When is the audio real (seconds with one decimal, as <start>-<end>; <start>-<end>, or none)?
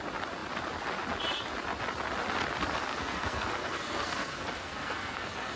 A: 0.0-2.9